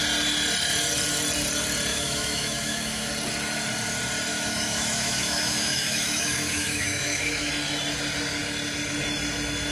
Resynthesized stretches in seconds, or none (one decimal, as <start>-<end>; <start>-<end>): 1.9-3.1; 4.3-7.5